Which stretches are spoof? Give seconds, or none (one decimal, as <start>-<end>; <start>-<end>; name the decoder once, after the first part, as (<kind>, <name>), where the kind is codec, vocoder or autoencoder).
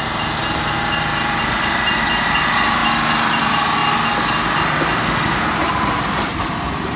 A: 0.0-2.8 (vocoder, BigVGAN v2); 3.4-3.8; 5.4-7.0